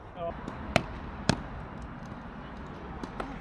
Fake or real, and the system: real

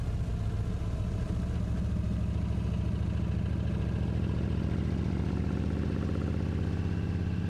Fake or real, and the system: real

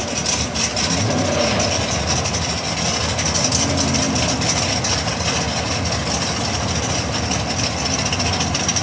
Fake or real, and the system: real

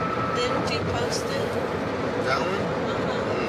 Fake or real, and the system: real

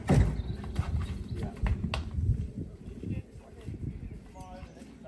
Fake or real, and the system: real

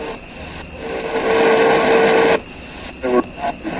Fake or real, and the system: real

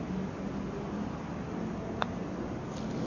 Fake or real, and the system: real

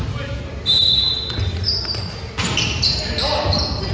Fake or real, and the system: real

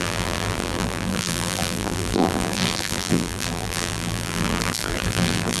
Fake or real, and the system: fake, vocoder, BigVGAN v2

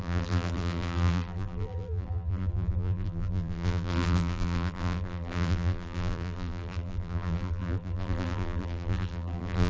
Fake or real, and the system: fake, vocoder, BigVGAN v2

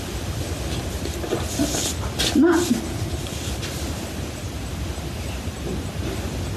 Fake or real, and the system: real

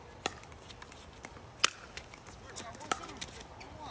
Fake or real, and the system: real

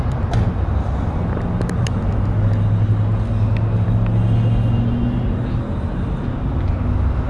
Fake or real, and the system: real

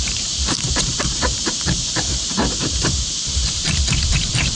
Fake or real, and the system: fake, vocoder, BigVGAN v2